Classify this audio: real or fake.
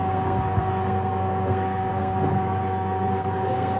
fake